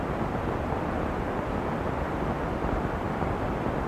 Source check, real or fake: real